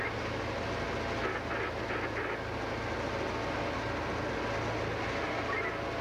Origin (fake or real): real